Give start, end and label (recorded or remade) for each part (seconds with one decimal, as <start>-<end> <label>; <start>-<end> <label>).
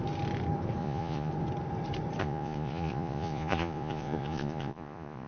0.0-0.8 recorded; 0.8-1.3 remade; 1.3-2.2 recorded; 2.2-5.3 remade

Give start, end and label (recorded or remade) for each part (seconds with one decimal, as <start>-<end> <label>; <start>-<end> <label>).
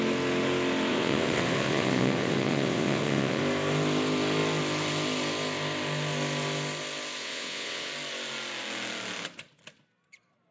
0.0-0.9 recorded; 0.9-3.4 remade; 3.4-7.2 recorded; 7.2-7.9 remade; 7.9-10.5 recorded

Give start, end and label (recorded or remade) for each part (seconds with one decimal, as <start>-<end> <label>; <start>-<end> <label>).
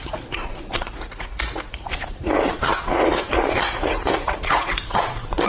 0.0-5.5 remade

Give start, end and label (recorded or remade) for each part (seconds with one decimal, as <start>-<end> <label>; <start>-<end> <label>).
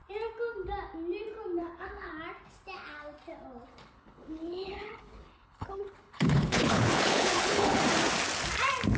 0.0-1.6 recorded; 1.6-2.1 remade; 2.1-3.7 recorded; 3.7-7.8 remade; 7.8-9.0 recorded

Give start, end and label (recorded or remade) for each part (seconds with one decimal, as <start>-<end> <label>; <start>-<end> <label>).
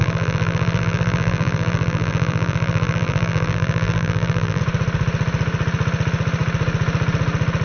0.0-4.6 remade; 4.6-7.6 recorded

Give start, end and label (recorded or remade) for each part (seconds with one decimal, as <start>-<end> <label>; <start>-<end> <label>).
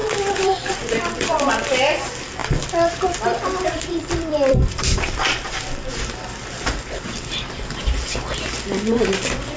0.0-1.5 remade; 1.5-2.4 recorded; 2.4-7.5 remade; 7.5-9.6 recorded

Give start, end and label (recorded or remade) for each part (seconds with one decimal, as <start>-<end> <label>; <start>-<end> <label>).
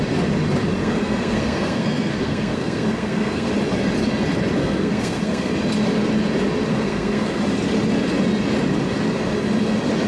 0.0-0.8 recorded; 0.8-3.5 remade; 3.5-4.6 recorded; 4.6-5.5 remade; 5.5-6.7 recorded; 6.7-7.4 remade; 7.4-10.1 recorded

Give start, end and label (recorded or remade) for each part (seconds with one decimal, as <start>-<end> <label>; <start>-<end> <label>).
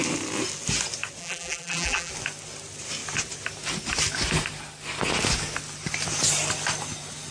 0.0-1.2 recorded; 1.2-2.1 remade; 2.1-7.3 recorded